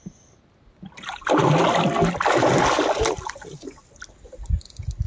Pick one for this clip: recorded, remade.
recorded